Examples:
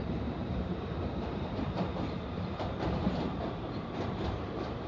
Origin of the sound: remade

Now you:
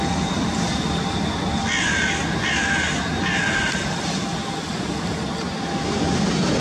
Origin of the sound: recorded